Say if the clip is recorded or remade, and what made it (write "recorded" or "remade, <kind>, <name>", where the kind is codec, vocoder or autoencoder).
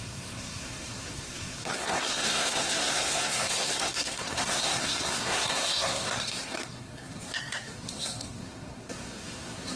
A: remade, codec, SNAC